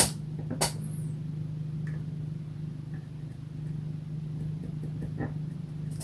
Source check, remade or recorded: recorded